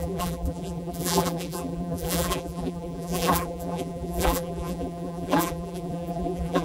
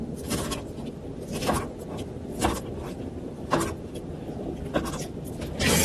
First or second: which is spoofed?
first